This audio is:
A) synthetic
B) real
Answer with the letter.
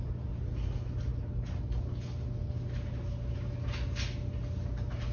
B